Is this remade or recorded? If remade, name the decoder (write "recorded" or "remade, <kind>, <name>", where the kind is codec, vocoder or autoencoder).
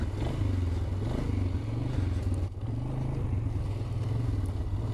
recorded